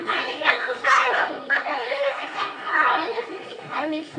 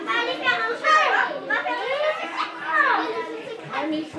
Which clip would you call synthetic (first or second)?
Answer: first